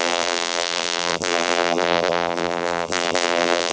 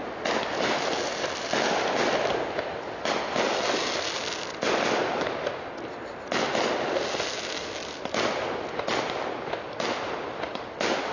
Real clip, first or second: second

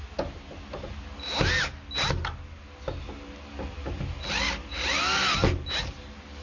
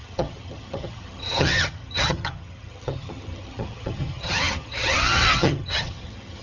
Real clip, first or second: first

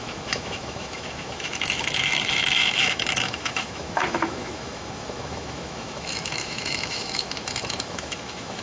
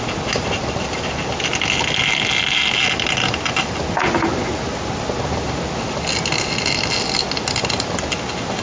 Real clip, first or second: second